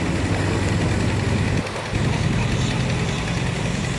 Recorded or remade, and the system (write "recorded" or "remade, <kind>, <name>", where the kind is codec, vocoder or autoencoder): recorded